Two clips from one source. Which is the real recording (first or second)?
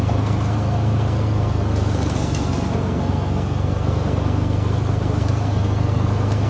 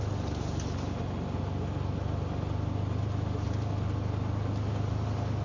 second